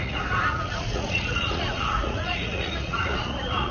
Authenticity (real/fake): fake